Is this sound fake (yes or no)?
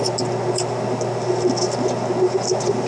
no